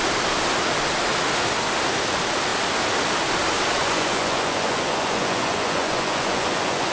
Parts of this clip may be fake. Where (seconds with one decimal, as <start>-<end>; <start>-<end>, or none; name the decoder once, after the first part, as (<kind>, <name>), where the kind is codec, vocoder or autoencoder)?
3.8-6.9 (vocoder, Vocos)

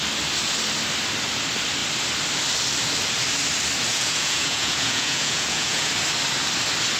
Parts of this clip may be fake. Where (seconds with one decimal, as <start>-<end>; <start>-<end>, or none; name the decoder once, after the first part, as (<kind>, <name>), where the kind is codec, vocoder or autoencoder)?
3.9-5.9 (vocoder, Vocos)

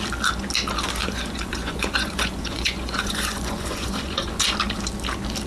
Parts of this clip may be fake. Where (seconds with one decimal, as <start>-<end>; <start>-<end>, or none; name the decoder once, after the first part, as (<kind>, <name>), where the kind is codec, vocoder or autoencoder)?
1.0-4.3 (vocoder, Vocos)

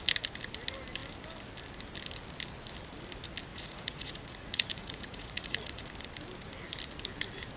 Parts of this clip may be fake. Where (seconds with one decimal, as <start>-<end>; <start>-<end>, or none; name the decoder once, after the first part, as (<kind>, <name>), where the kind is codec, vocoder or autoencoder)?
3.5-5.9 (vocoder, Vocos)

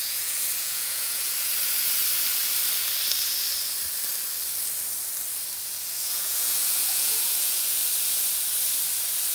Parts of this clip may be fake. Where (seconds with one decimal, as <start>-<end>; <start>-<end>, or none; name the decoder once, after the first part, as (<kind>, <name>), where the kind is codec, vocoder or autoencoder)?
0.0-1.5 (vocoder, Vocos); 5.8-7.8

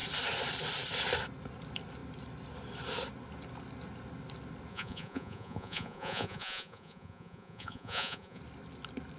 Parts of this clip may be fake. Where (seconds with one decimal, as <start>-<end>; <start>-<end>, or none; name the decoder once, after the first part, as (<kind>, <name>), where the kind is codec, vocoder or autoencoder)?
4.7-8.4 (vocoder, Vocos)

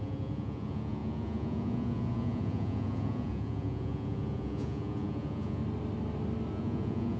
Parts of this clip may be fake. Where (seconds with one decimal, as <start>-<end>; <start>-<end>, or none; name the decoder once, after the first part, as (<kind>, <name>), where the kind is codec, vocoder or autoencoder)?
0.0-5.6 (vocoder, Vocos); 6.5-7.2